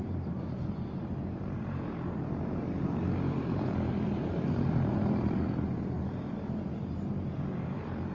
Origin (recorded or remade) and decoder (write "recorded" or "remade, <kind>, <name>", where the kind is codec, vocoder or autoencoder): remade, vocoder, BigVGAN v2